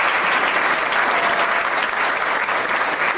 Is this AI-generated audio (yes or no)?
no